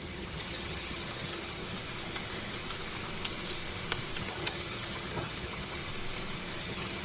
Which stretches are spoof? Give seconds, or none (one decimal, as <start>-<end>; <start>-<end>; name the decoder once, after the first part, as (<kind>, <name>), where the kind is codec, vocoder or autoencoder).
0.0-1.6 (vocoder, HiFi-GAN); 4.2-5.8; 6.6-7.0